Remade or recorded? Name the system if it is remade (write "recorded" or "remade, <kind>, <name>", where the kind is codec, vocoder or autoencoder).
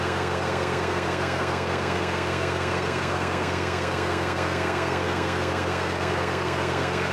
remade, codec, SNAC